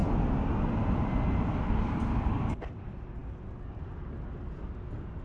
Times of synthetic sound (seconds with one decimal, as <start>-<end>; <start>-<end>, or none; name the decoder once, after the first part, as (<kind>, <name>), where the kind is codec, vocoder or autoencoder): none